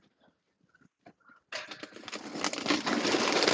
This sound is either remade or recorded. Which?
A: recorded